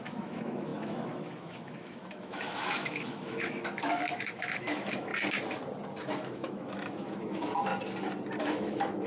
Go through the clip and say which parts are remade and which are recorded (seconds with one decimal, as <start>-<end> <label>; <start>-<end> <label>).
0.0-5.1 remade; 5.1-6.2 recorded; 6.2-7.7 remade; 7.7-8.4 recorded; 8.4-9.1 remade